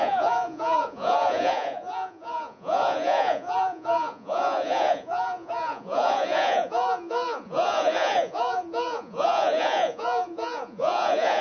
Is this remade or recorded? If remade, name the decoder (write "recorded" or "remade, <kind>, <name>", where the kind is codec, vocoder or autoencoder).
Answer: remade, vocoder, Vocos